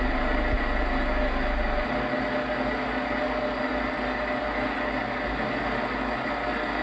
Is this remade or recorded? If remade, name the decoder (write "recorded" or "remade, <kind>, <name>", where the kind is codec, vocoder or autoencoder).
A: recorded